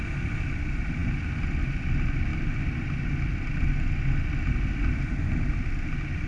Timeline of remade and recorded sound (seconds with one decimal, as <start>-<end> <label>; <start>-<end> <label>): 0.0-6.3 recorded